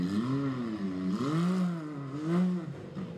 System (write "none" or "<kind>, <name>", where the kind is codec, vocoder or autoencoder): none